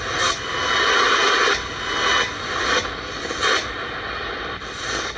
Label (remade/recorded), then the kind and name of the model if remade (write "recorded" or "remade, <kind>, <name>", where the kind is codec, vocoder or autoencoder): recorded